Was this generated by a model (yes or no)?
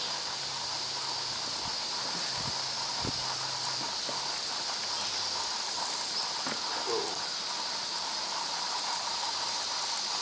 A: no